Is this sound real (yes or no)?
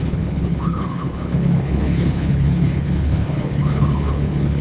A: no